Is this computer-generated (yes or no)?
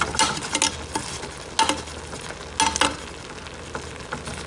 no